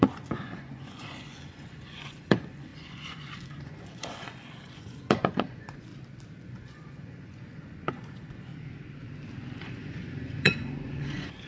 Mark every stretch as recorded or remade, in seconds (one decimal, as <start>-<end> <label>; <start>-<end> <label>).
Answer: 0.0-5.9 remade; 5.9-6.4 recorded; 6.4-8.5 remade; 8.5-9.6 recorded; 9.6-11.5 remade